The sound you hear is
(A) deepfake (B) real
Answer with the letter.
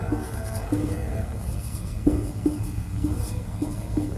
A